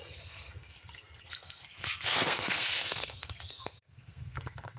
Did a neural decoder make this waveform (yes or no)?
yes